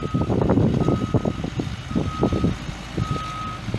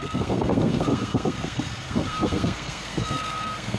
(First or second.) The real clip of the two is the first